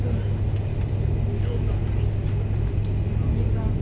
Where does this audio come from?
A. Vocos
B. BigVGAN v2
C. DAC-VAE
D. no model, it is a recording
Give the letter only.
D